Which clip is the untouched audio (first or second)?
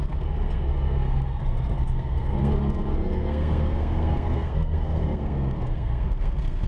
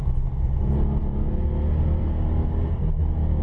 second